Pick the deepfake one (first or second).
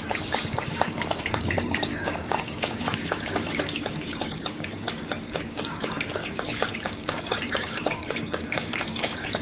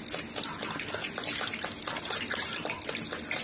first